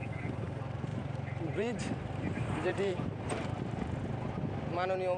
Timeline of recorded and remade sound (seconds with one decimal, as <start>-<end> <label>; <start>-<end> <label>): 0.0-0.9 recorded; 0.9-4.0 remade; 4.0-5.2 recorded